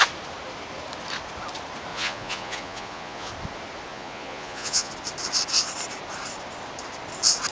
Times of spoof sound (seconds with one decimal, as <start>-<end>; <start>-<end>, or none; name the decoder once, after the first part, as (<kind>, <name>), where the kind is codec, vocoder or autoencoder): 1.9-3.3 (vocoder, Vocos); 3.9-4.9